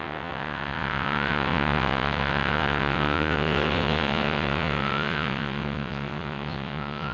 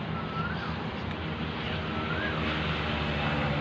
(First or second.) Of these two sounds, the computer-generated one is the first